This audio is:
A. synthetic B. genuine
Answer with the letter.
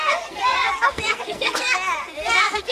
A